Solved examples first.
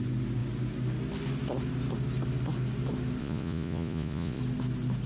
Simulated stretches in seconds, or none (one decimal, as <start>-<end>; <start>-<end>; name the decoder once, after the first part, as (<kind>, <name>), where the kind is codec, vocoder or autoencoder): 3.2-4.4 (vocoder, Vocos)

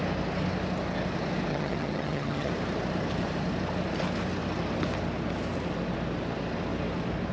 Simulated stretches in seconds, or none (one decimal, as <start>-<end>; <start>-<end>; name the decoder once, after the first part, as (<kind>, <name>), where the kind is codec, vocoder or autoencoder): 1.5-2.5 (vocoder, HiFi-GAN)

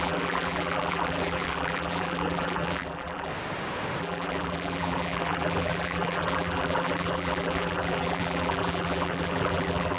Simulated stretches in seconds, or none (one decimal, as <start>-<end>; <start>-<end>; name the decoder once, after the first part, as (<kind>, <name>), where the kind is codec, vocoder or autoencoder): 0.0-3.3 (vocoder, BigVGAN v2); 4.0-10.0

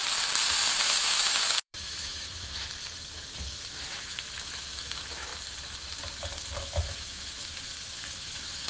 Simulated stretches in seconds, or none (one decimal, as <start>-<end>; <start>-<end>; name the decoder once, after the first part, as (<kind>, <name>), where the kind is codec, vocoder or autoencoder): 0.7-2.6 (autoencoder, DAC-VAE); 3.9-5.3; 6.6-8.7